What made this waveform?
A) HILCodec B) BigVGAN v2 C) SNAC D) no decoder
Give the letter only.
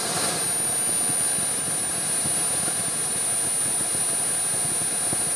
D